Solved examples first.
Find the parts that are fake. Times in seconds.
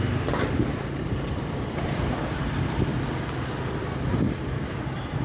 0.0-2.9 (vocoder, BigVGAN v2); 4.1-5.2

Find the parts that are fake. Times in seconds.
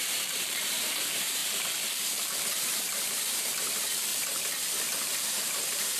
0.0-4.1 (vocoder, BigVGAN v2); 5.1-6.0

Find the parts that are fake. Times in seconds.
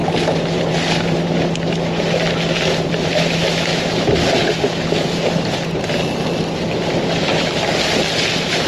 none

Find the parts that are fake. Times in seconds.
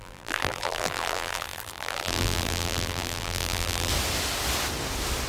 0.0-3.9 (vocoder, BigVGAN v2)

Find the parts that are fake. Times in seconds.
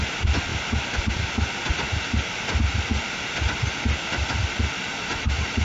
none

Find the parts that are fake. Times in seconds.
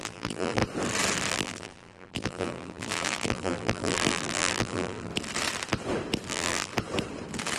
0.0-0.6 (vocoder, BigVGAN v2); 1.3-5.1; 6.3-6.7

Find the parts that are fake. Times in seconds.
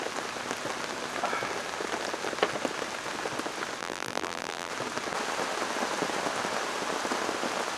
3.8-4.7 (vocoder, BigVGAN v2)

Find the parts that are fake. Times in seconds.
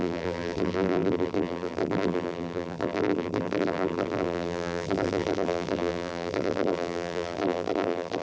0.0-8.2 (vocoder, BigVGAN v2)